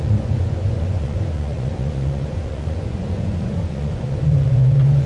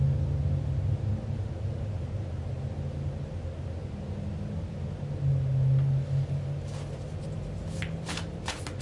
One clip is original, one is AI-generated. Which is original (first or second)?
second